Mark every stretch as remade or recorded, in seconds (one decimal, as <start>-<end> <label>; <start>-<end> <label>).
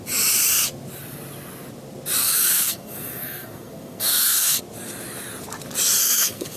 0.0-2.2 recorded; 2.2-4.6 remade; 4.6-6.0 recorded; 6.0-6.6 remade